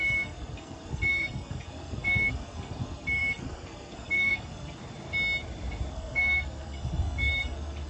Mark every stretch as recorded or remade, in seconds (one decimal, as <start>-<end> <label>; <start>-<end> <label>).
0.0-4.8 remade; 4.8-5.9 recorded; 5.9-7.9 remade